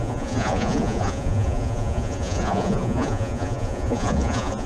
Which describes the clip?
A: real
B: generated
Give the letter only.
B